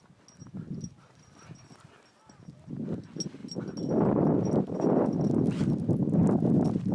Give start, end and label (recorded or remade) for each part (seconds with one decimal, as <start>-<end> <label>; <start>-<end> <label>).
0.0-6.9 recorded